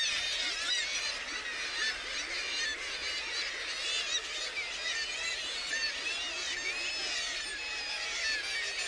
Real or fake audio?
real